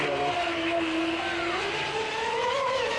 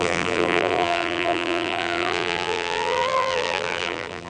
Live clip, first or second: first